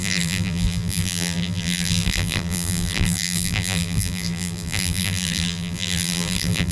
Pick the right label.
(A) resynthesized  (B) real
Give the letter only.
A